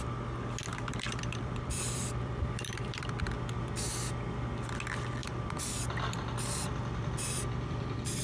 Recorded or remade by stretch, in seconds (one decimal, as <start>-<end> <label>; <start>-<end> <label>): 0.0-0.7 recorded; 0.7-3.2 remade; 3.2-5.2 recorded; 5.2-8.2 remade